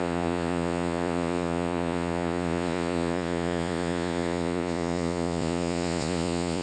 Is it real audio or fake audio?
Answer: fake